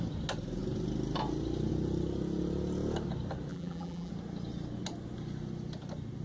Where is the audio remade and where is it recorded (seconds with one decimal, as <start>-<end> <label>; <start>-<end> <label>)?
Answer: 0.0-3.5 recorded; 3.5-4.1 remade; 4.1-6.2 recorded